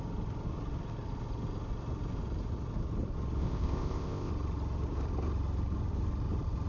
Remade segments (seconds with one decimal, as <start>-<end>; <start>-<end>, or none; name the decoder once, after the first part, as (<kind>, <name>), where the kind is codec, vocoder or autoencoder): 3.4-4.3 (codec, ZipCodec)